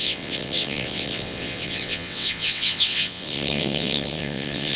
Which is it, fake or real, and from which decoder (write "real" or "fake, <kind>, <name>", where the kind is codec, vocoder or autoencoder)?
fake, vocoder, WaveNeXt